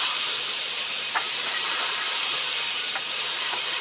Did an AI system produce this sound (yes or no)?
yes